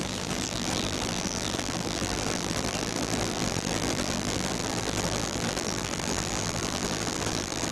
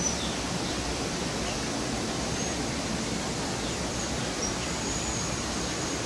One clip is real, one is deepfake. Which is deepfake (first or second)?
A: first